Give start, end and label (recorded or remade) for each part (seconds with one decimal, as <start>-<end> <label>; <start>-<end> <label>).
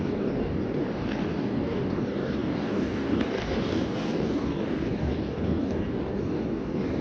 0.0-7.0 remade